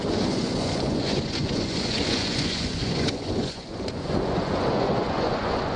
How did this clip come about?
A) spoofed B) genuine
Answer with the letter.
A